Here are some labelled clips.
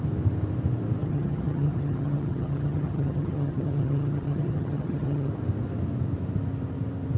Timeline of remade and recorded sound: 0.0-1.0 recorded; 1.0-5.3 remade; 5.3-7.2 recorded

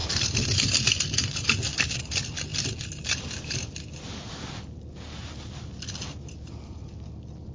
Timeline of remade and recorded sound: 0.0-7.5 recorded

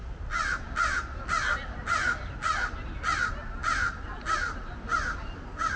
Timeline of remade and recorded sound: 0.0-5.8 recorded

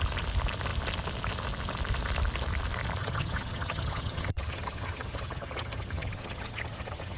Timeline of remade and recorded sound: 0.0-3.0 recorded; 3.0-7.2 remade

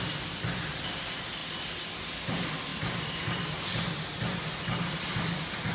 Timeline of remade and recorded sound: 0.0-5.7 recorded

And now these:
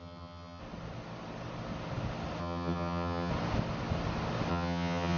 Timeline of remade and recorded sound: 0.0-0.6 remade; 0.6-2.4 recorded; 2.4-3.3 remade; 3.3-4.5 recorded; 4.5-5.2 remade